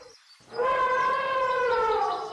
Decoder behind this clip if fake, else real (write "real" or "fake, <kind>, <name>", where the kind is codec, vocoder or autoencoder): real